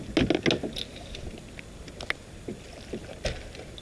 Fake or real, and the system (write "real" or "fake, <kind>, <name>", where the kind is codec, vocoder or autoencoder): real